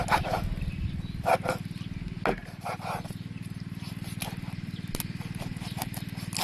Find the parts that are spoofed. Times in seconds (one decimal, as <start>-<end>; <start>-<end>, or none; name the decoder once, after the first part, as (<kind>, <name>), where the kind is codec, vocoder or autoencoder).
2.4-3.9 (vocoder, BigVGAN v2)